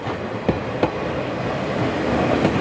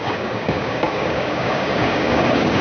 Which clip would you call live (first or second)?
first